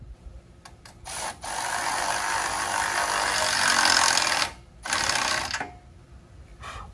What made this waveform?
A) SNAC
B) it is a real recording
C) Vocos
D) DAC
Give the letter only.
B